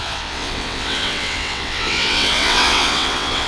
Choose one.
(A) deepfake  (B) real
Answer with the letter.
A